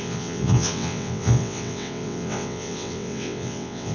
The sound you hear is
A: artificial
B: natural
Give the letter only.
A